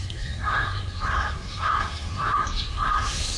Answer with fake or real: fake